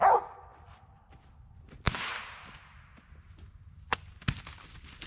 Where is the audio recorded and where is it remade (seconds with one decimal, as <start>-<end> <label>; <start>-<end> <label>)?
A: 0.0-5.1 recorded